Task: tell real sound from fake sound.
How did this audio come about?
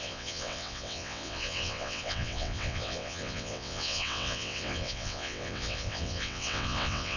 fake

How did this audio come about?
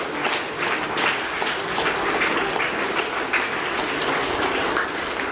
real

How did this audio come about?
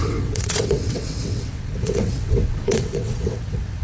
fake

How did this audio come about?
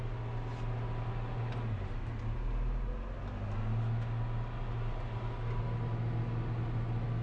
real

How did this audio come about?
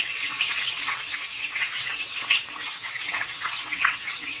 fake